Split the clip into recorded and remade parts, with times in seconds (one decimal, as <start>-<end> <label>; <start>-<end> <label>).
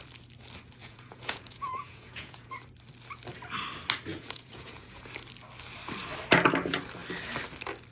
0.0-0.8 recorded; 0.8-2.5 remade; 2.5-4.1 recorded; 4.1-5.1 remade; 5.1-7.9 recorded